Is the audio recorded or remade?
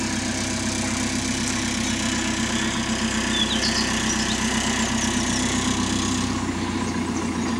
recorded